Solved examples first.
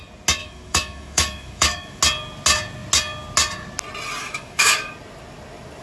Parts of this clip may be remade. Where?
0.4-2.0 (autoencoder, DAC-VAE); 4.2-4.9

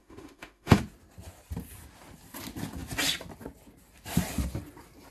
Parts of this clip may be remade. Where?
0.0-0.8 (autoencoder, DAC-VAE)